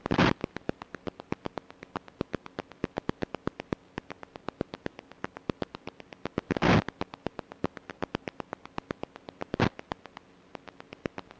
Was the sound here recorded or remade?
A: recorded